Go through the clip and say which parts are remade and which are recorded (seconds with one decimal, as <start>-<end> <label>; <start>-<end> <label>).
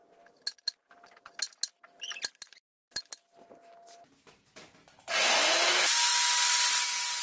0.0-7.2 recorded